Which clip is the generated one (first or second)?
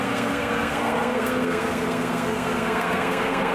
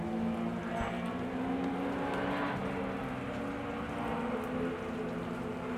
first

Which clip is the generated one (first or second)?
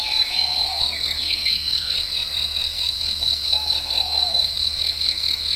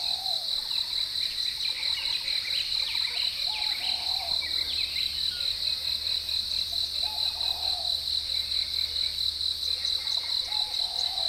first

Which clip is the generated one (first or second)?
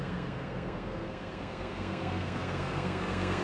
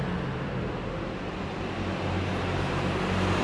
first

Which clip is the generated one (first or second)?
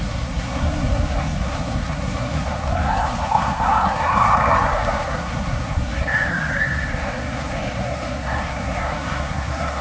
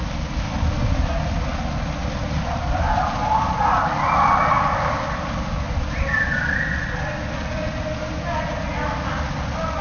first